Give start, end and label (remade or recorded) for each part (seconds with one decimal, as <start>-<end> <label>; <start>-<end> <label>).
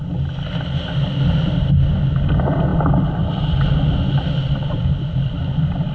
0.0-5.9 recorded